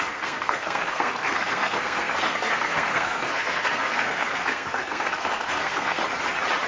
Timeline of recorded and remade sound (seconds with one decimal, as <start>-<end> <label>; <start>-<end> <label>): 0.0-6.0 remade; 6.0-6.7 recorded